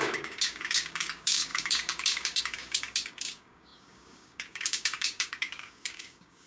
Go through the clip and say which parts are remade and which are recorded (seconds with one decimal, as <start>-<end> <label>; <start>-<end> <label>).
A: 0.0-6.5 remade